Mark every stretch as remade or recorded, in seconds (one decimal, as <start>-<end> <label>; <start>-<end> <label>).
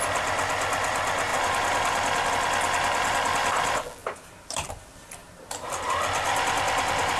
0.0-4.0 recorded; 4.0-4.7 remade; 4.7-5.2 recorded; 5.2-5.8 remade; 5.8-7.2 recorded